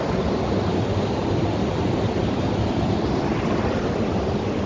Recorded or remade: recorded